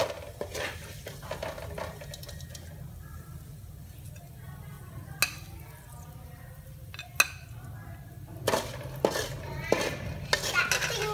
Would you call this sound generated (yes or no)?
no